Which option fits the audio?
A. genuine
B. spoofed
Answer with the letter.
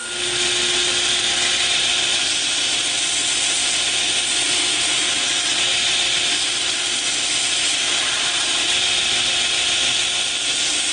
A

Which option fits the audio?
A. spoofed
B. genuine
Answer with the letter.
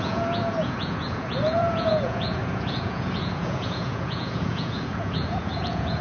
A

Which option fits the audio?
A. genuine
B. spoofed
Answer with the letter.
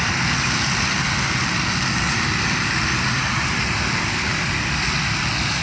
A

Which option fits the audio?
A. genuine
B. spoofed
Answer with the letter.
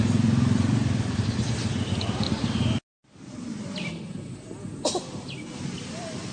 A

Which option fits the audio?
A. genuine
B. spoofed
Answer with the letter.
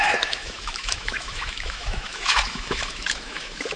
B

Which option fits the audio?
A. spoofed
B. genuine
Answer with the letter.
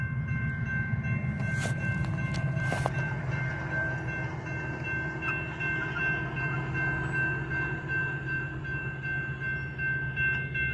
B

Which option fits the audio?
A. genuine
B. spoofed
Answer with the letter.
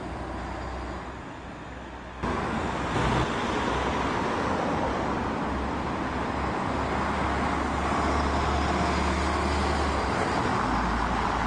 A